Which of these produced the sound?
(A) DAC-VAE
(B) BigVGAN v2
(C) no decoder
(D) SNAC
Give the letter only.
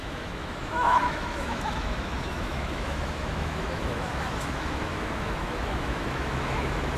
A